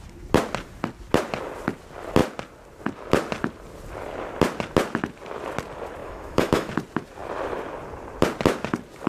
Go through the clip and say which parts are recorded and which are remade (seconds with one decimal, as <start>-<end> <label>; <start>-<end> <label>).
0.0-6.0 recorded; 6.0-6.7 remade; 6.7-9.1 recorded